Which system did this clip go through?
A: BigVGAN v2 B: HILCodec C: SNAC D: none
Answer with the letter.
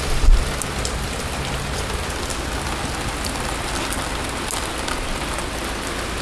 D